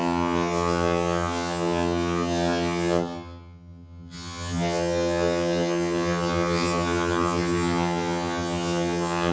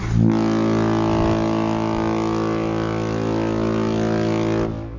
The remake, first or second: first